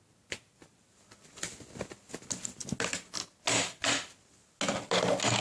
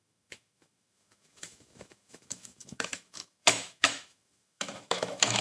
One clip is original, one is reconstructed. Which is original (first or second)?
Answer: first